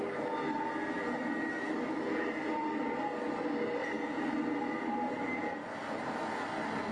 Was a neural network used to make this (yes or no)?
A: no